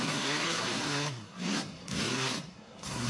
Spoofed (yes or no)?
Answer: yes